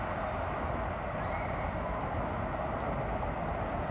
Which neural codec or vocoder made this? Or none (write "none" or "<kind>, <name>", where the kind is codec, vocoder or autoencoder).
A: none